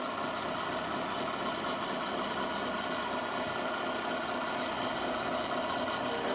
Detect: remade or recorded recorded